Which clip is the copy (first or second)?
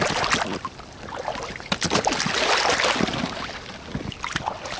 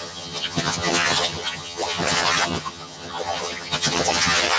second